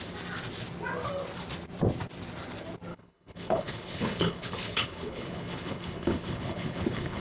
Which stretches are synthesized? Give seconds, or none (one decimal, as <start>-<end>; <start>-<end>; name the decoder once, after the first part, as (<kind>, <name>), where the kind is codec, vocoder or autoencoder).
2.9-7.2 (codec, HILCodec)

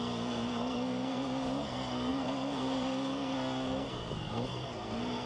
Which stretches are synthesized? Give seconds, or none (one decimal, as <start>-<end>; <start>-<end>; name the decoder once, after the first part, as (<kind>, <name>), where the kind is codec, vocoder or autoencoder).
0.0-5.3 (codec, SNAC)

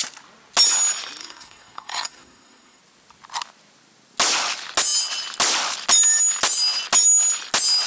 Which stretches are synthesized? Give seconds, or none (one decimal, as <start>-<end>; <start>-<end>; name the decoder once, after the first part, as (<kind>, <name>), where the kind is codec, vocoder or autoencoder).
1.2-2.8 (codec, SNAC)

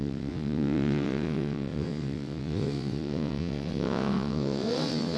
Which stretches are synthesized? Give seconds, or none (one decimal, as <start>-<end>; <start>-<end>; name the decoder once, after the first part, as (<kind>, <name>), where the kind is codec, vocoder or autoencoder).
0.0-5.2 (vocoder, WaveNeXt)

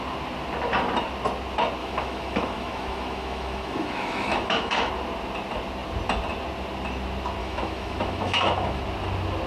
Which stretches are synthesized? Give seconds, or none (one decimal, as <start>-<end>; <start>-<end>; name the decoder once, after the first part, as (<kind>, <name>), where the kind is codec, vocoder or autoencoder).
1.8-4.9 (autoencoder, DAC-VAE); 7.4-8.8

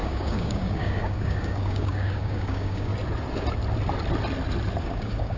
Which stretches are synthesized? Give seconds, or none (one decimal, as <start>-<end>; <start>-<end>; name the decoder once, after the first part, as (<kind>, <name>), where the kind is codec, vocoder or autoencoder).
0.0-2.9 (codec, DAC); 4.8-5.4

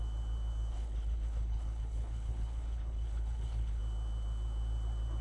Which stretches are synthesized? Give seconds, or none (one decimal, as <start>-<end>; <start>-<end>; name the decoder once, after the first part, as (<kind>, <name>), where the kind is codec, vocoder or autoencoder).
0.7-3.8 (codec, HILCodec)